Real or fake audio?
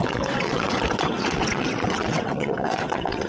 fake